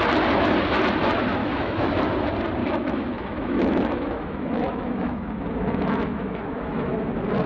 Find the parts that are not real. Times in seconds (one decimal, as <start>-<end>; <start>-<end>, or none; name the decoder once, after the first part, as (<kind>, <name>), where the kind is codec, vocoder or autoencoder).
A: 1.4-1.9 (autoencoder, DAC-VAE); 2.6-7.1